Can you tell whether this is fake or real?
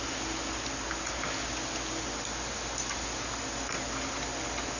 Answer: real